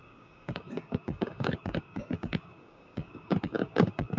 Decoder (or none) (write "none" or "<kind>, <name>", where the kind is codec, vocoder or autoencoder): codec, DAC